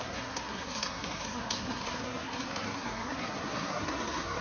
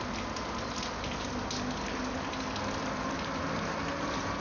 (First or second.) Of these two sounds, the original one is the second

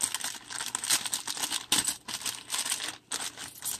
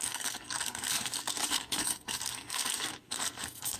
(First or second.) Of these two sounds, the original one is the first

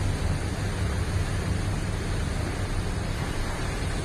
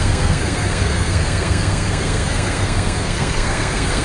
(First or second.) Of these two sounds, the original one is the first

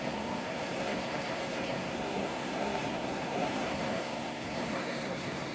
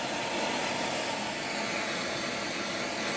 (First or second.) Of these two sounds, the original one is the second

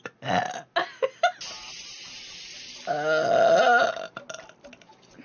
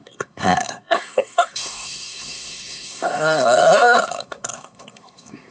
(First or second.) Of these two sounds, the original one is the first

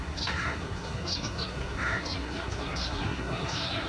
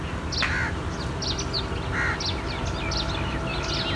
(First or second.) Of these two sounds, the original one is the second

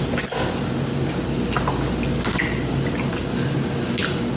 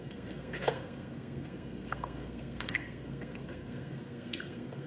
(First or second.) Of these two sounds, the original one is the first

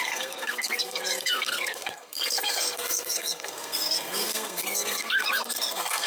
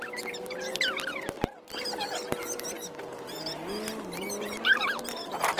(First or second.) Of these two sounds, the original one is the second